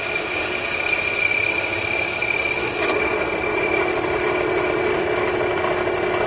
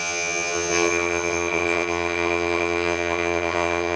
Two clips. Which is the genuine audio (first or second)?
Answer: first